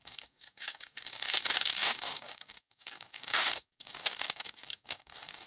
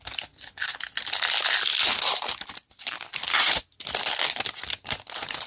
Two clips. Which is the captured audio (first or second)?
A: second